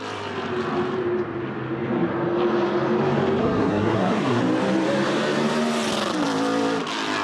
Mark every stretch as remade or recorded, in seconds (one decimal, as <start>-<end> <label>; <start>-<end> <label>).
0.0-3.4 recorded; 3.4-4.4 remade; 4.4-7.2 recorded